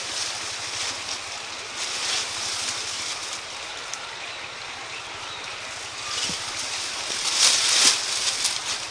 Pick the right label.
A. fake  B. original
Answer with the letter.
B